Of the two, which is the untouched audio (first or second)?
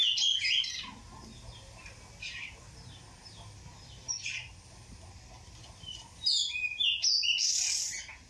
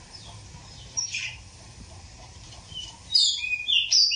first